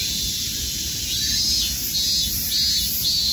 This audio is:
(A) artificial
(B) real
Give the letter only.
B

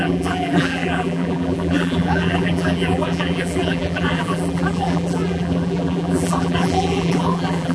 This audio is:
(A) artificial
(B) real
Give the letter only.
A